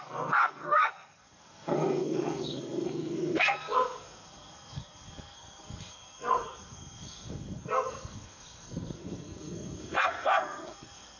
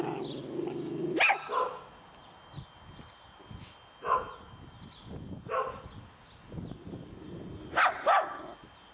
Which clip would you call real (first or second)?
second